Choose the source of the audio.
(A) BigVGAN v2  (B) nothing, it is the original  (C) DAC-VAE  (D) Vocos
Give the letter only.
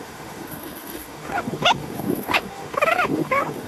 C